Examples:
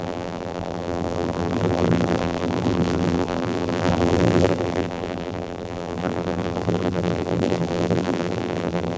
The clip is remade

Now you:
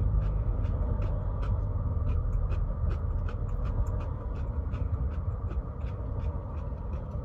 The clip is recorded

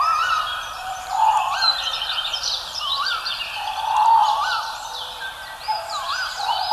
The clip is remade